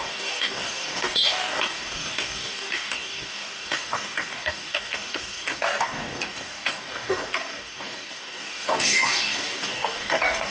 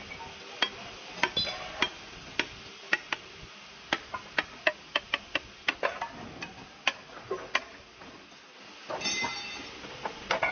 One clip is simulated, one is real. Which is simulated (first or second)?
first